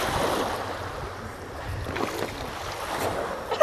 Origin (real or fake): real